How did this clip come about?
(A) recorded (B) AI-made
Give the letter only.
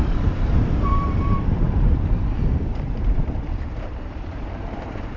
B